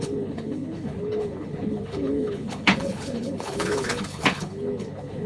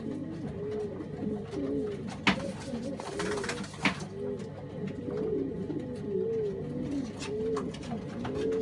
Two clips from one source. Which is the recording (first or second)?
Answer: second